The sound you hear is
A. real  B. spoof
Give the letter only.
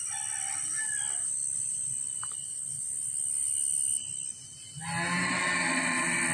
A